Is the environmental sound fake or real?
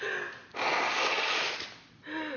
real